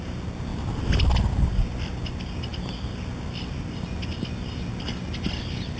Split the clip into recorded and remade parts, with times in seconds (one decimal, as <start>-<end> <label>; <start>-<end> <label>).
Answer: 0.0-5.8 recorded